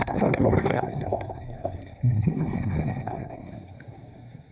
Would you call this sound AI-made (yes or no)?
yes